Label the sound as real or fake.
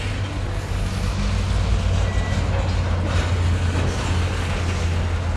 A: real